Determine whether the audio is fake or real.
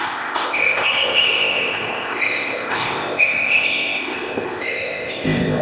fake